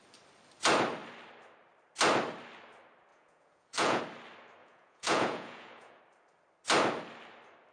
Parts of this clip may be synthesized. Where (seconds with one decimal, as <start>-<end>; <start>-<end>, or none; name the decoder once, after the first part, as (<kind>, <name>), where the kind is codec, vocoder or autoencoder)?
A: 3.1-4.0 (vocoder, Vocos); 4.6-6.0